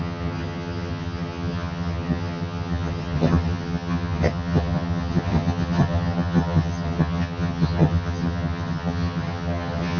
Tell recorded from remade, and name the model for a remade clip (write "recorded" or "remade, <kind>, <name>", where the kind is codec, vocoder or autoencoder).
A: remade, vocoder, HiFi-GAN